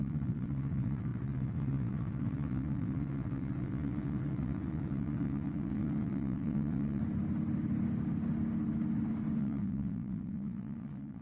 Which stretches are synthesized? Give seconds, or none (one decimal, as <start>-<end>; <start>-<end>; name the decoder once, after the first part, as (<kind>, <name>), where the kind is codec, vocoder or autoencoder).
0.0-7.0 (vocoder, WaveNeXt); 9.4-11.2